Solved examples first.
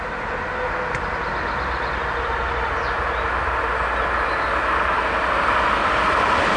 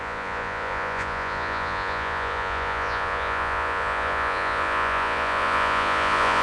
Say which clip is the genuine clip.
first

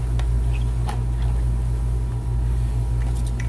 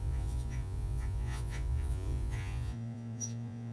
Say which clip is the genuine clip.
first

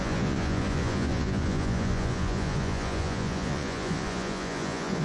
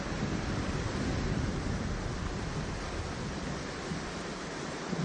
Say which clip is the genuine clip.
second